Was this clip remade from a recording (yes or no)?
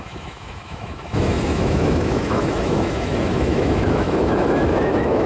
yes